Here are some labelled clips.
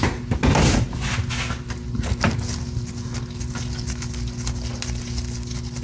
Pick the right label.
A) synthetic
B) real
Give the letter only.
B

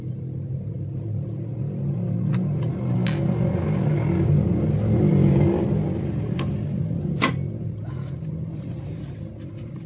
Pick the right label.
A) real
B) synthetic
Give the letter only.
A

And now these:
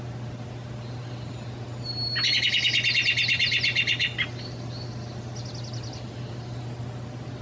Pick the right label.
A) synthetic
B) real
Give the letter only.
B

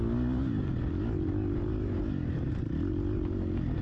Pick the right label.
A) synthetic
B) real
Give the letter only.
B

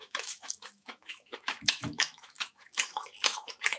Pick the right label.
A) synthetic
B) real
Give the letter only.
A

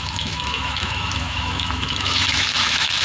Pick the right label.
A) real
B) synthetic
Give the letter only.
B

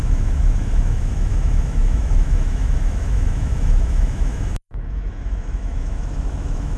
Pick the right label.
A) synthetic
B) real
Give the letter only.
A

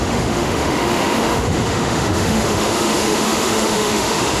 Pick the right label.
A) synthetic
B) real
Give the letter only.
A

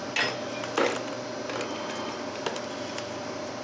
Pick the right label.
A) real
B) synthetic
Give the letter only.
A